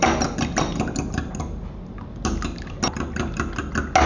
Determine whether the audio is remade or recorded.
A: recorded